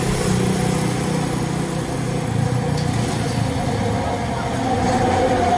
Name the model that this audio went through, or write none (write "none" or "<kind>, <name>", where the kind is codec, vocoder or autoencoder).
none